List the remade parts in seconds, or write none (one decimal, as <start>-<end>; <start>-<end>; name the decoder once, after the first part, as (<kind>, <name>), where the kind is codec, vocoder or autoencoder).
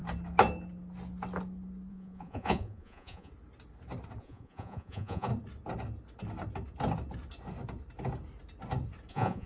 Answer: 1.9-3.3 (vocoder, Vocos); 4.2-5.3; 9.1-9.5